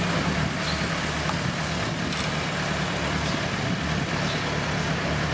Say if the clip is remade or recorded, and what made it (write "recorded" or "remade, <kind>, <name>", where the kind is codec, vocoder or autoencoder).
recorded